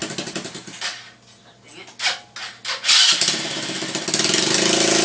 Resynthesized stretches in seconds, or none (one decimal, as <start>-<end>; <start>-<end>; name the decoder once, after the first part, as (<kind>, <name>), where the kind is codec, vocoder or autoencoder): none

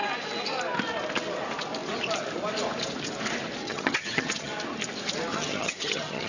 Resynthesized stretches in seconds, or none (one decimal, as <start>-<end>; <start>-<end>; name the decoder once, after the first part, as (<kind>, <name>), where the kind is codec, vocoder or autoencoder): 3.6-4.5 (vocoder, HiFi-GAN); 5.3-6.3

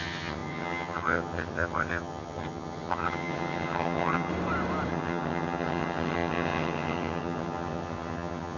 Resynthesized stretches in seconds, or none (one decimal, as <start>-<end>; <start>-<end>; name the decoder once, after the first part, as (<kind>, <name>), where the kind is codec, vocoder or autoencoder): 0.0-4.3 (vocoder, HiFi-GAN); 4.9-8.6

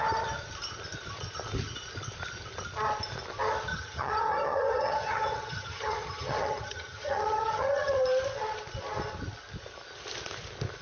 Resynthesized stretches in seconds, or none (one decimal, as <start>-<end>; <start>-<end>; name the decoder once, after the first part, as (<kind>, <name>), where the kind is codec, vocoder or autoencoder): 3.7-8.0 (vocoder, HiFi-GAN)

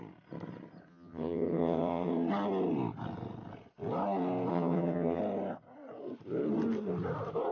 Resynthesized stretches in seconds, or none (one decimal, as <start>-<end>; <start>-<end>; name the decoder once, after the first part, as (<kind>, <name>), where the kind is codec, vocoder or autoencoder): 0.9-2.1 (vocoder, HiFi-GAN); 4.5-5.2

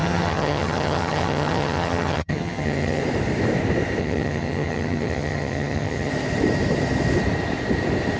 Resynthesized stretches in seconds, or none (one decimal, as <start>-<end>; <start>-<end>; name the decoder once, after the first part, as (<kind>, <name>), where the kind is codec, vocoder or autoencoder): 0.0-3.0 (vocoder, HiFi-GAN); 4.0-6.1